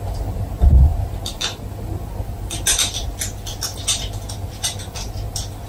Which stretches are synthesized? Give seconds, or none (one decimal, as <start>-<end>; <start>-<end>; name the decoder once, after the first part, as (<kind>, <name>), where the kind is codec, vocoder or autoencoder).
none

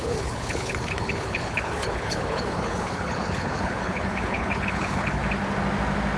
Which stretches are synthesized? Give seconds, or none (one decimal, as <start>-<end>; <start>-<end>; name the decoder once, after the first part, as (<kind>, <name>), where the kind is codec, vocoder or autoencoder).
0.0-5.2 (codec, HILCodec)

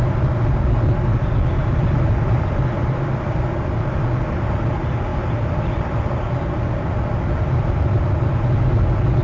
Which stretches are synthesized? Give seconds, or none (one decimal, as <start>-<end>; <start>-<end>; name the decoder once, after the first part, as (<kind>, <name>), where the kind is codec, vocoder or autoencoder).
1.6-2.4 (vocoder, BigVGAN v2); 2.8-3.9

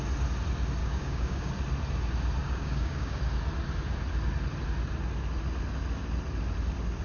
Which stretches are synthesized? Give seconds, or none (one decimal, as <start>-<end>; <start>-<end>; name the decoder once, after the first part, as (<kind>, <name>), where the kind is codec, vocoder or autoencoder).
0.8-1.5 (codec, DAC); 2.4-3.2

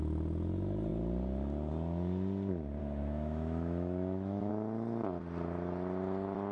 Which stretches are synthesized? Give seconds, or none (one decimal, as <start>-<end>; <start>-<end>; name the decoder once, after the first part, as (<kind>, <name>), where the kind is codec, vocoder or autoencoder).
2.8-4.5 (autoencoder, DAC-VAE)